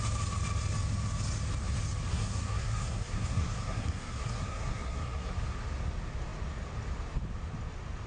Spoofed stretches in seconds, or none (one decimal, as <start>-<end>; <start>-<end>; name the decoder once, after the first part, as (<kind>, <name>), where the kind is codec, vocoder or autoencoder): 2.1-5.3 (codec, SNAC)